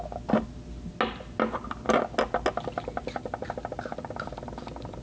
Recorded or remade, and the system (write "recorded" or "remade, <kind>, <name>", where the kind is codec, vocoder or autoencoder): recorded